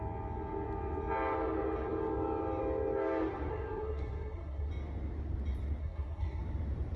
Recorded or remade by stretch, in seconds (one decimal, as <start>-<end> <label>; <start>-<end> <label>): 0.0-3.5 recorded; 3.5-4.7 remade; 4.7-5.8 recorded; 5.8-6.4 remade; 6.4-7.0 recorded